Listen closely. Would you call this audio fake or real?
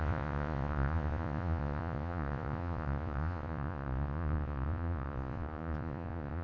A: fake